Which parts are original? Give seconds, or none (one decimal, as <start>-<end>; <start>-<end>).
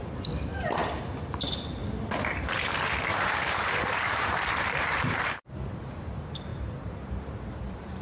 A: 0.0-3.1; 5.5-6.5; 7.5-8.0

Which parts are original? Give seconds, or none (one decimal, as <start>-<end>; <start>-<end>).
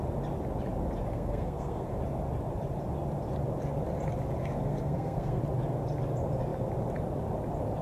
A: 0.0-1.1; 1.9-4.4; 5.4-7.8